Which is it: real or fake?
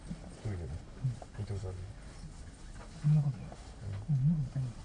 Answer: real